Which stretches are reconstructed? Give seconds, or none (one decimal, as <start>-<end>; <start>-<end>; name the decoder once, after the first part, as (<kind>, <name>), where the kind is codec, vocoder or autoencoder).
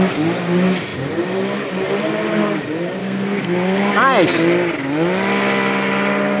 3.0-3.9 (codec, SNAC)